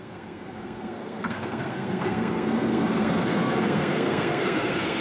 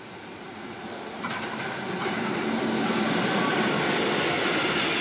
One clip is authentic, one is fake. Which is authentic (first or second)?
second